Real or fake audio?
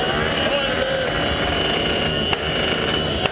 real